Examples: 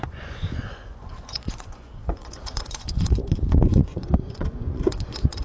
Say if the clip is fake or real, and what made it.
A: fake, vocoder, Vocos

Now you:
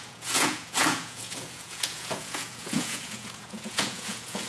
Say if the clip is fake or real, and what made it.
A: fake, vocoder, Vocos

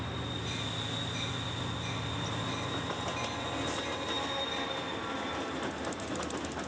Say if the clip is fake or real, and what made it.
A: real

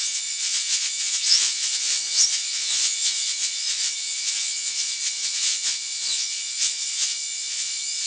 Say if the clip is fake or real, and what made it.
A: fake, vocoder, Vocos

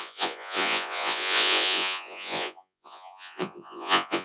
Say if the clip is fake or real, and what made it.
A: fake, vocoder, Vocos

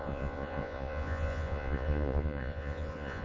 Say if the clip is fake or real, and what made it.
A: fake, vocoder, Vocos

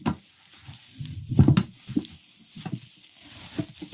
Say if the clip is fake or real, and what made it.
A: real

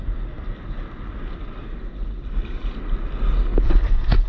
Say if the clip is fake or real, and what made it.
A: real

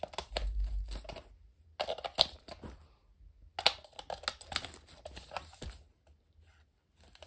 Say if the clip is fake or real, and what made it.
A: real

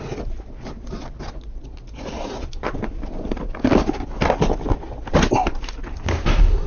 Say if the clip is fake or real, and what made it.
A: real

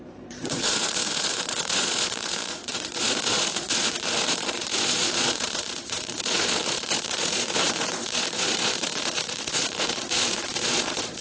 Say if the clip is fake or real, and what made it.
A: fake, vocoder, Vocos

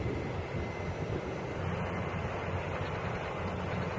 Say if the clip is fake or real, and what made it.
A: real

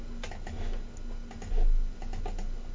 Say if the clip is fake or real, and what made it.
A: real